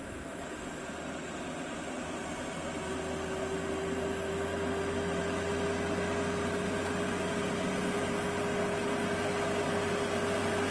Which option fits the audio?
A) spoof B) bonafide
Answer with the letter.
B